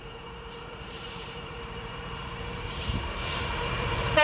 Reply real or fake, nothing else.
fake